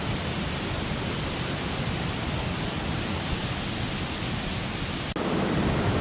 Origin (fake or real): real